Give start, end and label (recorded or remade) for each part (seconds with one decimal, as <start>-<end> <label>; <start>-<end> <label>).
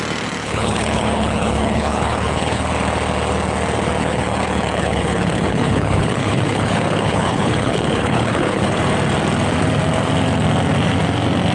0.0-0.4 recorded; 0.4-2.7 remade; 2.7-4.0 recorded; 4.0-8.8 remade; 8.8-11.5 recorded